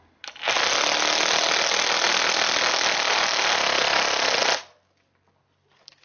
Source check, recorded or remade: recorded